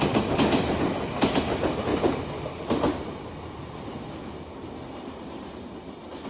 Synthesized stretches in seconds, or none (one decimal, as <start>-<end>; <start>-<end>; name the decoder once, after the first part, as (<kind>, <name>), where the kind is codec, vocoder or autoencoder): none